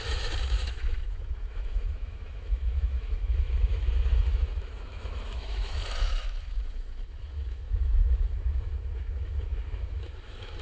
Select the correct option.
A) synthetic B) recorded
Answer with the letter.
A